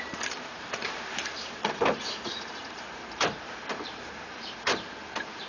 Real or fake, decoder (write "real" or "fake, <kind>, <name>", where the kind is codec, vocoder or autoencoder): fake, vocoder, BigVGAN v2